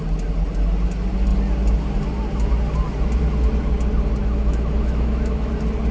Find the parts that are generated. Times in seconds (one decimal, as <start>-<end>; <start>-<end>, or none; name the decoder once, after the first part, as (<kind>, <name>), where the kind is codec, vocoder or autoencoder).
4.2-5.5 (autoencoder, DAC-VAE)